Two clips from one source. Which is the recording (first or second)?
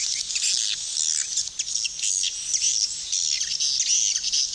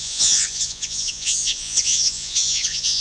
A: first